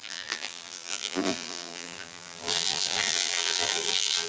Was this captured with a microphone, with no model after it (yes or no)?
no